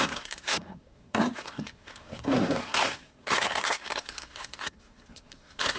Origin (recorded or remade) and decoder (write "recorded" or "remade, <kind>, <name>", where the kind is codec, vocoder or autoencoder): remade, codec, SNAC